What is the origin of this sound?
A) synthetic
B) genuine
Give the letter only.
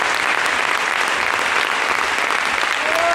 B